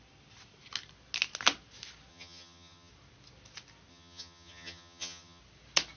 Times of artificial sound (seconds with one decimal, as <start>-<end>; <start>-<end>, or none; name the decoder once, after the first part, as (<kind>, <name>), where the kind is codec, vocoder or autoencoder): 2.1-2.9 (vocoder, HiFi-GAN); 3.9-5.4